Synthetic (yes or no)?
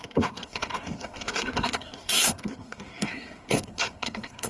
yes